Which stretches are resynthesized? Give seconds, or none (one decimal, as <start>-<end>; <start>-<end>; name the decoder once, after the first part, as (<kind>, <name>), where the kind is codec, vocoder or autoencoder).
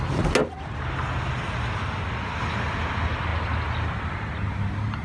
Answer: none